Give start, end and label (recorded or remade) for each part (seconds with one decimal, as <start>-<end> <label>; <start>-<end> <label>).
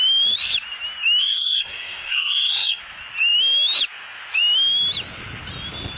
0.0-1.2 recorded; 1.2-2.8 remade; 2.8-6.0 recorded